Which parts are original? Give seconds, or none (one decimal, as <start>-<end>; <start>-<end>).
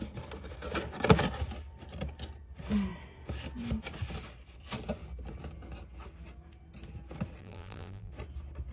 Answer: 0.0-7.4; 8.1-8.7